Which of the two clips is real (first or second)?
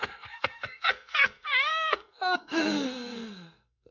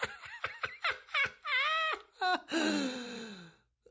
second